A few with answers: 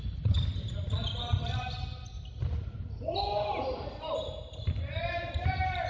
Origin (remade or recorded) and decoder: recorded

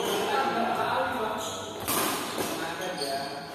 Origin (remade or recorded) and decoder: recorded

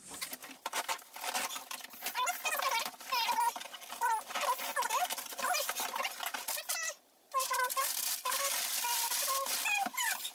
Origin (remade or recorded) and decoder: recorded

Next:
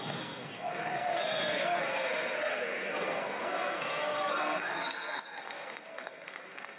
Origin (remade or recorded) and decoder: remade, codec, SNAC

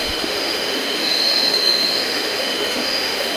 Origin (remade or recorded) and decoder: remade, autoencoder, DAC-VAE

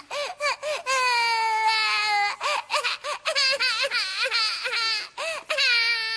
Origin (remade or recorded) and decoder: recorded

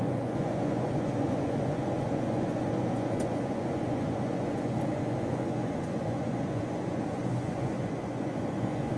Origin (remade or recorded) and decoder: remade, vocoder, Vocos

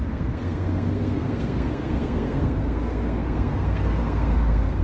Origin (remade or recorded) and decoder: remade, codec, SNAC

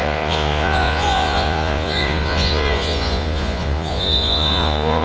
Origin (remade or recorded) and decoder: remade, vocoder, Vocos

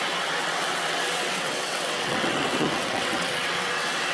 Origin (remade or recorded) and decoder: remade, vocoder, WaveNeXt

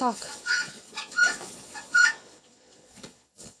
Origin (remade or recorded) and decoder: remade, vocoder, Vocos